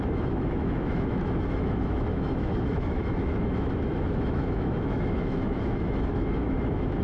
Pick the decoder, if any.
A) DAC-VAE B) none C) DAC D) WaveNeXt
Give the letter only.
A